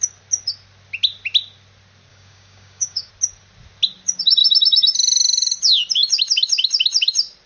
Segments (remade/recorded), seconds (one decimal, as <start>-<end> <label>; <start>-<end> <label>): 0.0-2.1 recorded; 2.1-3.1 remade; 3.1-7.5 recorded